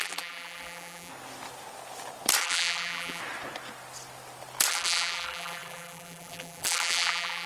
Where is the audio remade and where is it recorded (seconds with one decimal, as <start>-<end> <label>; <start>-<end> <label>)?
0.0-1.1 remade; 1.1-2.4 recorded; 2.4-3.2 remade; 3.2-4.7 recorded; 4.7-7.5 remade